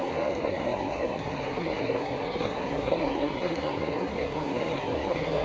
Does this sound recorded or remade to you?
remade